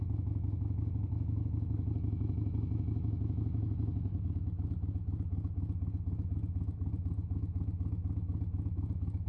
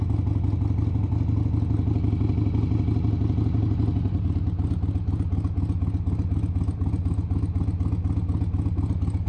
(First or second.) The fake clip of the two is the first